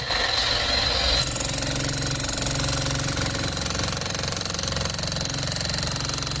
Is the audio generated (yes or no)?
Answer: no